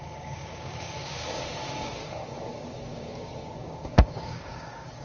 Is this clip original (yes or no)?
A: no